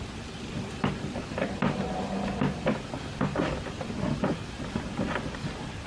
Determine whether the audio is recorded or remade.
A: recorded